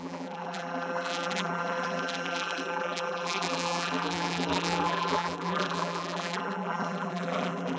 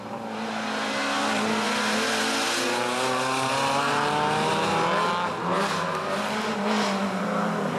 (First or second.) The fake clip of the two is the first